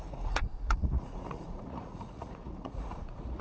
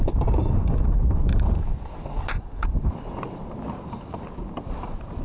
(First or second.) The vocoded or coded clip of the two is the first